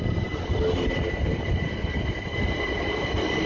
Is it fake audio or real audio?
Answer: real